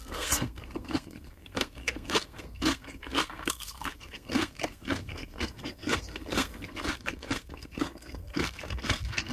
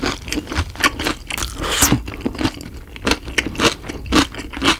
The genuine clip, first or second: second